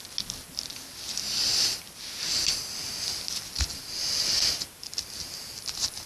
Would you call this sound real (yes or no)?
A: yes